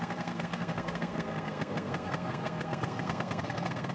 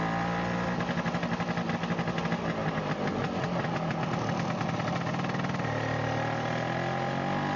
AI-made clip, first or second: first